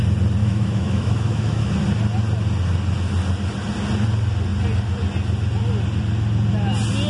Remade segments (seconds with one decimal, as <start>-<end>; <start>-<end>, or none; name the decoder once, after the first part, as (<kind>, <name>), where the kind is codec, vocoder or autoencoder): 0.4-1.7 (autoencoder, DAC-VAE)